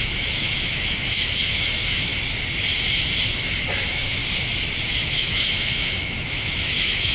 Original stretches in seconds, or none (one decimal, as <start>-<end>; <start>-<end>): 2.1-3.8; 4.2-4.9